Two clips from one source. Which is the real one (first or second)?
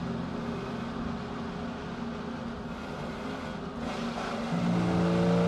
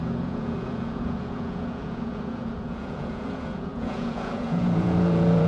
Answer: first